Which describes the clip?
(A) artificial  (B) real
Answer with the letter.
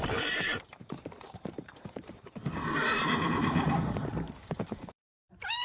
A